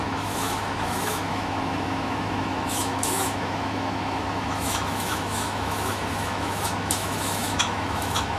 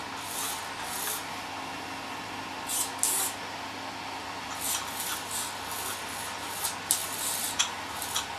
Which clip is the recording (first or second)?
second